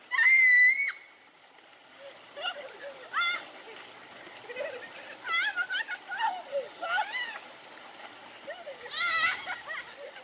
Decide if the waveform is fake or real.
real